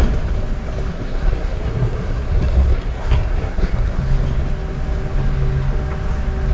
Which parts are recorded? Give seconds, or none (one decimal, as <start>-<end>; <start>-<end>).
0.0-0.9; 4.0-6.5